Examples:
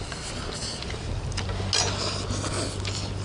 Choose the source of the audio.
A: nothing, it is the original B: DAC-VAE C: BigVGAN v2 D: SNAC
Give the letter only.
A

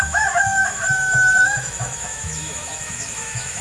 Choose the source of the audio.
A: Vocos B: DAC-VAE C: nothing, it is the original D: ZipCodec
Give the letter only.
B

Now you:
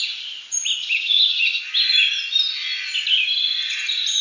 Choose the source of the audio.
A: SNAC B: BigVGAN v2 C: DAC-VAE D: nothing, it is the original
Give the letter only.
D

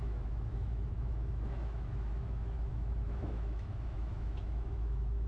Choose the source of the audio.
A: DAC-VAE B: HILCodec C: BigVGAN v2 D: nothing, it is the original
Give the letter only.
A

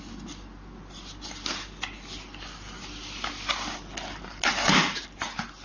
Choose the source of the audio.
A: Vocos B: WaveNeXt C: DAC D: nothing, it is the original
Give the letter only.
D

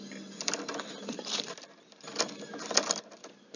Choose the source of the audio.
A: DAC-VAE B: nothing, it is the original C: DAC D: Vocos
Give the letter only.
B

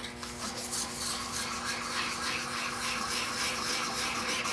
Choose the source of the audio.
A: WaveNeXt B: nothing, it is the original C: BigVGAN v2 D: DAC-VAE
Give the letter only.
B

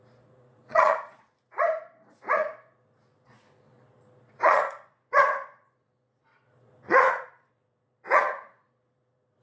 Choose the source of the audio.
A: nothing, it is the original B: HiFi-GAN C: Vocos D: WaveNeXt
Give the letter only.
C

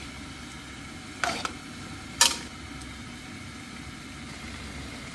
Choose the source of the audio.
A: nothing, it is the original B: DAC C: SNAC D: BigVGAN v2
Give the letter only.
A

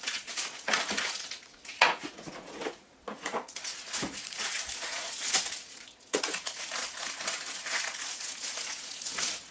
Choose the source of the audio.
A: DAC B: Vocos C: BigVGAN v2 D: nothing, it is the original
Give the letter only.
B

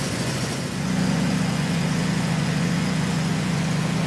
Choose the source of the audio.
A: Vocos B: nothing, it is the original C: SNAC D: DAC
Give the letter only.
A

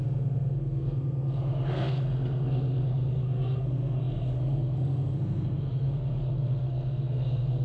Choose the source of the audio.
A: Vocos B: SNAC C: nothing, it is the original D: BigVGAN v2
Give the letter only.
B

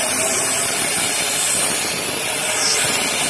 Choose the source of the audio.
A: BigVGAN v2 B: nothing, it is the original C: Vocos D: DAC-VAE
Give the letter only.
B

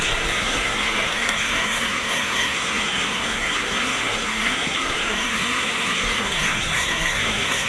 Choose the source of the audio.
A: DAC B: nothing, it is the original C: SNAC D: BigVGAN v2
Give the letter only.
C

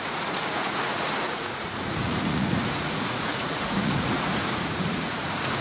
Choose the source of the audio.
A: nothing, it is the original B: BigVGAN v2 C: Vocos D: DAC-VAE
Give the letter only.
C